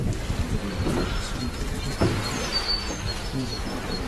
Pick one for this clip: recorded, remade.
recorded